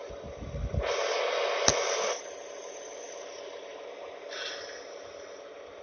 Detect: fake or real real